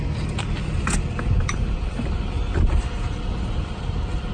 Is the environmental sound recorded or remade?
recorded